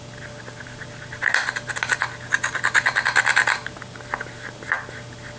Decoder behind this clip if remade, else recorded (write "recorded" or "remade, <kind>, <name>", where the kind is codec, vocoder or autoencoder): recorded